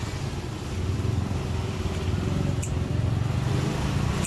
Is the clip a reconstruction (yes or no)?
no